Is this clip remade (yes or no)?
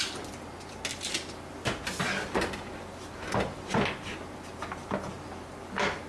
no